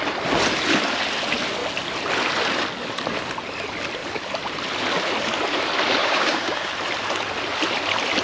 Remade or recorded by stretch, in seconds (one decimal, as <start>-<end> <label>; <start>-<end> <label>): 0.0-6.0 recorded; 6.0-6.7 remade; 6.7-8.2 recorded